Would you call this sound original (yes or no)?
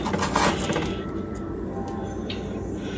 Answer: yes